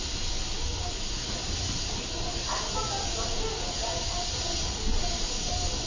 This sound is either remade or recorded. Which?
recorded